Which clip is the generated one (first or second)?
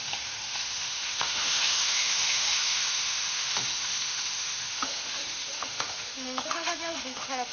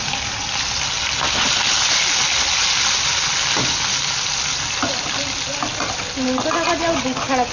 first